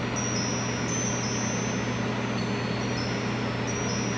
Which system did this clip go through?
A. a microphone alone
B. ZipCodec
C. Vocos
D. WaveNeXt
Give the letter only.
A